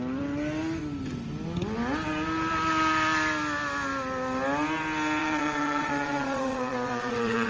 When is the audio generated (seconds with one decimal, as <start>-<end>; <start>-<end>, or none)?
5.2-7.5